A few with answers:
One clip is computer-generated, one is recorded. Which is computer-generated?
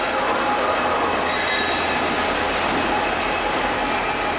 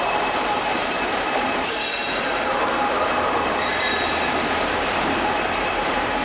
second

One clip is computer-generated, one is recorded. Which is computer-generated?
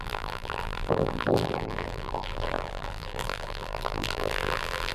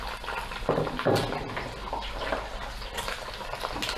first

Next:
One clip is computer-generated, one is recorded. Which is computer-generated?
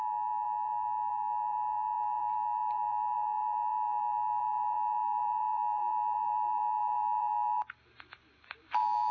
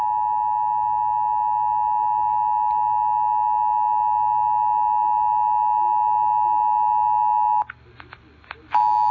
first